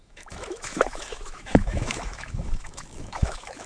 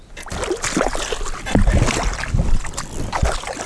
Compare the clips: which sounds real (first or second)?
second